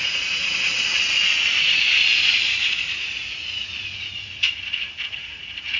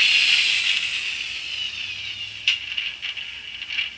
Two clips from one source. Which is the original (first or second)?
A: second